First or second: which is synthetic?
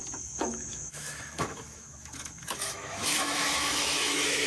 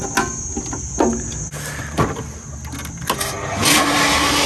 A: first